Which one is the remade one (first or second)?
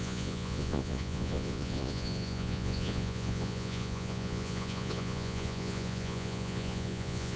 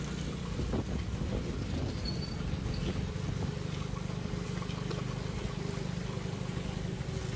first